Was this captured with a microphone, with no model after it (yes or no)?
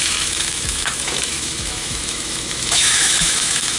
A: no